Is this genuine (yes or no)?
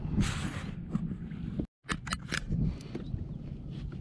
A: yes